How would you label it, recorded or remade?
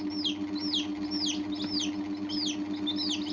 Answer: recorded